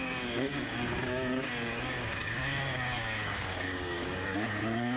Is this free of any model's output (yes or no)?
no